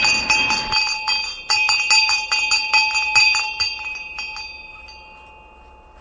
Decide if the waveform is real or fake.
real